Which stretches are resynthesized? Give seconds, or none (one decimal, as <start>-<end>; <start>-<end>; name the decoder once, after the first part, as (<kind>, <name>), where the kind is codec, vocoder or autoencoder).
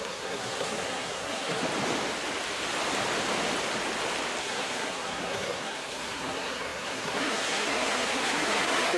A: 0.0-1.6 (codec, SNAC); 4.4-9.0